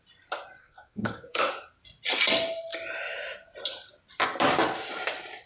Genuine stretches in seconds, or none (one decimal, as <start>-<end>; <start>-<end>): 0.0-0.6; 1.5-5.5